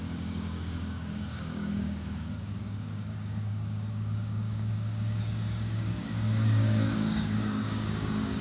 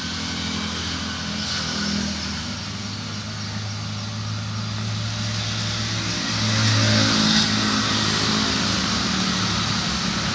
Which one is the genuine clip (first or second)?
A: second